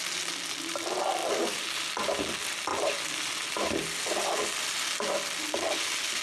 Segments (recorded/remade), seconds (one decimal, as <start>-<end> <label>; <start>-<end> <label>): 0.0-6.2 recorded